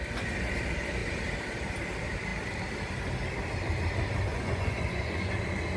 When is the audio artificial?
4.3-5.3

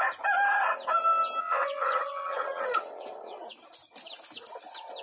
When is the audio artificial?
1.4-3.4

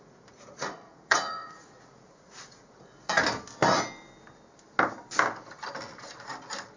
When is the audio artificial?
0.0-3.2

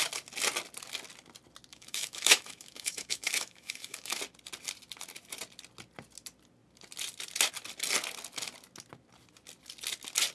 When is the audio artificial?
1.7-4.2

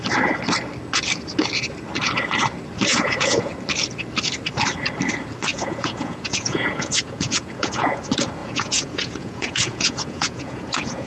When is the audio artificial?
2.9-3.5; 5.5-8.0; 8.4-11.1

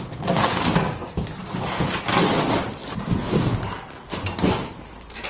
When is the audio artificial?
1.0-2.0; 2.8-3.4

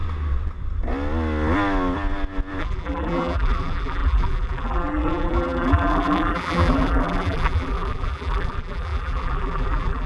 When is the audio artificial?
2.6-10.1

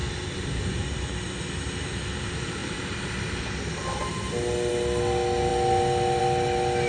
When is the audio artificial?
none